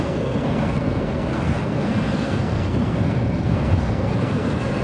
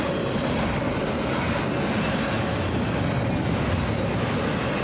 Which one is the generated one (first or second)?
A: first